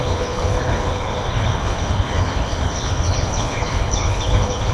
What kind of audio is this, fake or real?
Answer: fake